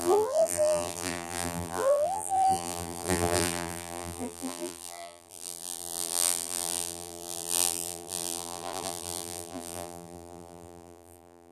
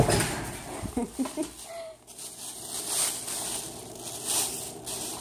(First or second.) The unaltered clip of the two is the second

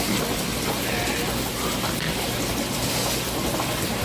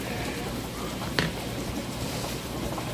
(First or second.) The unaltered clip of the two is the first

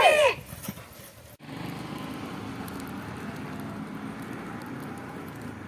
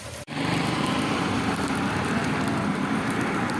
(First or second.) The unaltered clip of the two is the first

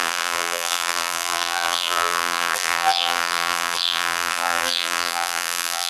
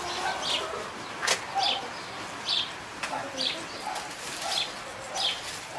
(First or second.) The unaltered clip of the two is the second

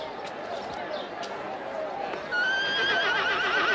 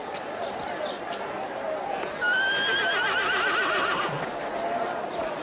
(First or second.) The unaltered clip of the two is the first